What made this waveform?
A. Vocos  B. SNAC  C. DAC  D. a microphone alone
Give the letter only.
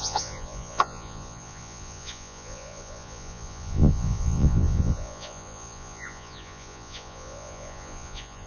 A